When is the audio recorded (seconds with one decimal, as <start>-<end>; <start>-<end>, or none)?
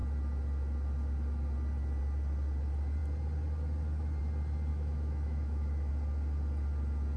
0.0-4.7; 5.9-7.2